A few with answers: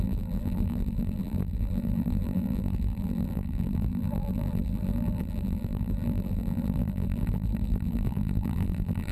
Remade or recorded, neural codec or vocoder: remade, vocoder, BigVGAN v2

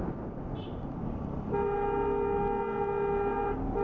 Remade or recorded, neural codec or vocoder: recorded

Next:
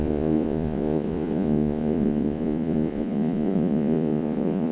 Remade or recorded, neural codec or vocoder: remade, vocoder, Vocos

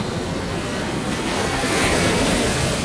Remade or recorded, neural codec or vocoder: remade, codec, SNAC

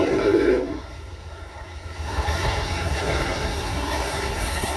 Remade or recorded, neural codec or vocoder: remade, codec, SNAC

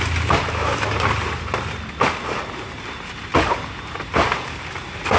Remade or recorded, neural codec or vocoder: recorded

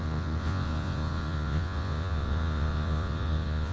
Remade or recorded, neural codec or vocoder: remade, vocoder, Vocos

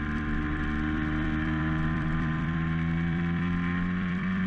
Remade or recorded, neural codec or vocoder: remade, vocoder, BigVGAN v2